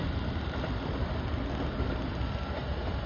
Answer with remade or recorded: recorded